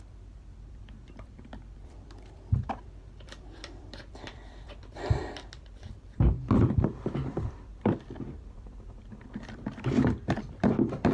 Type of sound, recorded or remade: remade